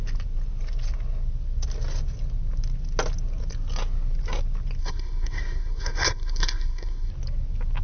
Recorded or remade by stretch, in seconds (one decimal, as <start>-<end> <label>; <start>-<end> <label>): 0.0-4.8 recorded; 4.8-7.1 remade; 7.1-7.8 recorded